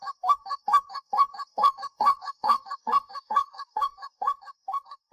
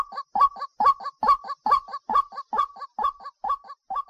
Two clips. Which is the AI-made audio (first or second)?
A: first